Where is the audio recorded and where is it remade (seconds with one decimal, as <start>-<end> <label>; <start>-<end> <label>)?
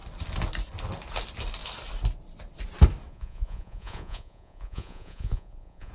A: 0.0-3.1 recorded; 3.1-5.9 remade